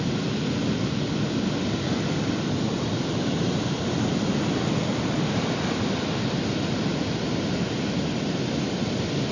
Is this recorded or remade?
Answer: recorded